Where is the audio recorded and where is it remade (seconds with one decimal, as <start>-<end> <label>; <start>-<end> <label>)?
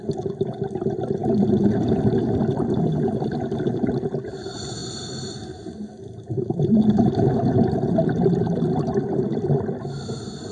0.0-4.8 recorded; 4.8-5.7 remade; 5.7-10.5 recorded